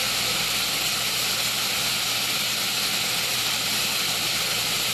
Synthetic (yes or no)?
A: no